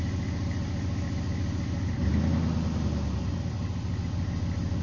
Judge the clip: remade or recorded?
recorded